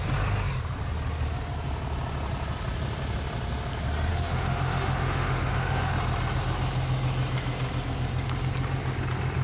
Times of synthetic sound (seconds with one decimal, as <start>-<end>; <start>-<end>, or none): 4.1-5.9

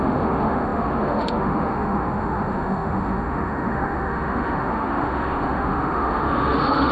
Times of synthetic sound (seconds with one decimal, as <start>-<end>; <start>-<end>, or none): 0.0-6.9